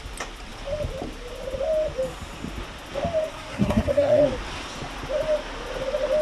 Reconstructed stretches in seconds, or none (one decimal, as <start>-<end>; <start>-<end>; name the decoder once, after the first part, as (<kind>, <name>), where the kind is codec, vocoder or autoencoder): 3.3-4.2 (codec, SNAC)

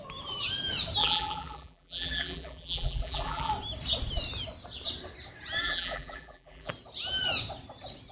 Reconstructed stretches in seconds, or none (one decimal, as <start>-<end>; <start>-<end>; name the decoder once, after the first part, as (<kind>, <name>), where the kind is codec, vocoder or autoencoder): 1.0-3.5 (vocoder, BigVGAN v2); 5.6-6.7

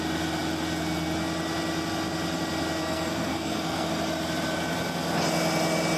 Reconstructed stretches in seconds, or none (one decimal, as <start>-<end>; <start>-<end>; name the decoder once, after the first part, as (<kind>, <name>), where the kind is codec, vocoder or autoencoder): 2.8-3.9 (codec, SNAC)

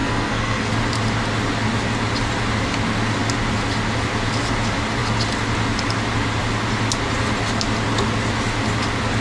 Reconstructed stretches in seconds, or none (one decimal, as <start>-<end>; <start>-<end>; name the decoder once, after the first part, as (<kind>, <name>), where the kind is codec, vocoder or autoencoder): 0.0-0.7 (codec, SNAC)